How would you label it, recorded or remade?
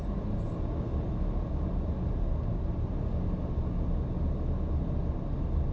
recorded